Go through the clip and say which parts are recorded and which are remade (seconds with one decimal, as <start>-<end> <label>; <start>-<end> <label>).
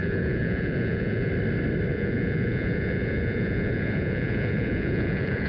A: 0.0-1.3 remade; 1.3-1.9 recorded; 1.9-5.5 remade